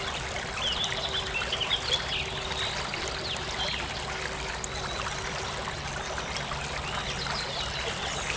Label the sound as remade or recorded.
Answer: recorded